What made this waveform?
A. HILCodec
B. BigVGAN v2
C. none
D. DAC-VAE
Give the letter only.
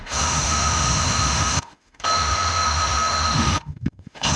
D